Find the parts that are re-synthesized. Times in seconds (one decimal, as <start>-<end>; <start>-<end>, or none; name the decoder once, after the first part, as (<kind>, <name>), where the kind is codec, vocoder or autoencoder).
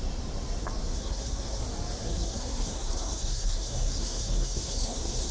0.9-1.6 (codec, SNAC); 2.0-5.3